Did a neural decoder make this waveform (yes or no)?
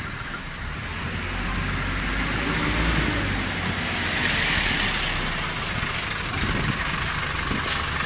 no